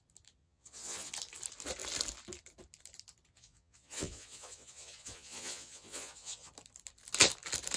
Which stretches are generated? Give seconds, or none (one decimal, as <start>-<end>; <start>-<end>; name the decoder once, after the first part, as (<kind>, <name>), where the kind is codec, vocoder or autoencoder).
0.4-1.1 (vocoder, Vocos); 3.3-6.5